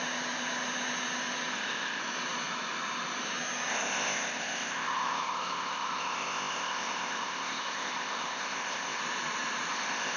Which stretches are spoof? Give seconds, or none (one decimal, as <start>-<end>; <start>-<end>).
1.5-2.0; 3.7-9.0; 9.7-10.2

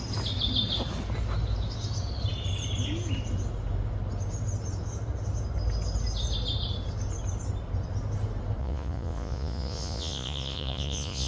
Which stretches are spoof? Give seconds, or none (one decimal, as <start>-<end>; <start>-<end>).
8.6-11.3

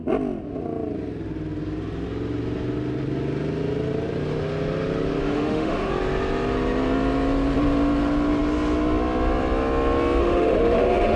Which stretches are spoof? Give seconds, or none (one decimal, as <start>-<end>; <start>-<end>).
5.2-5.9; 10.2-11.2

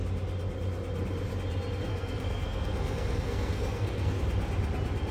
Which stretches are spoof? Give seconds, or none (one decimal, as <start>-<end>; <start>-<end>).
1.9-4.2

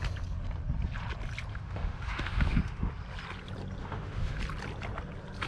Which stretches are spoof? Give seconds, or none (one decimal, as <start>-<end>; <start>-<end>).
1.5-2.9; 3.8-4.4